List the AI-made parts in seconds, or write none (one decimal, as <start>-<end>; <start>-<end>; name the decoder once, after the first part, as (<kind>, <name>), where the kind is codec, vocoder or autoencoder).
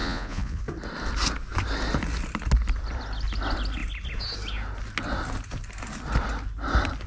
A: 0.0-0.6 (vocoder, Vocos)